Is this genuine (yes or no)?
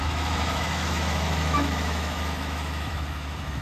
no